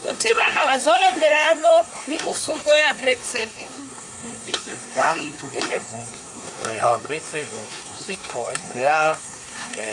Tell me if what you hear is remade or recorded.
remade